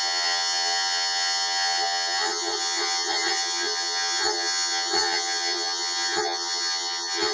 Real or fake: fake